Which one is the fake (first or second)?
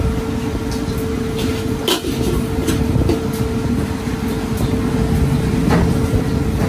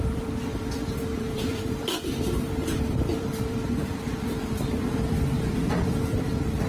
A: second